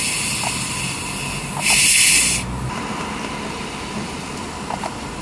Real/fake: real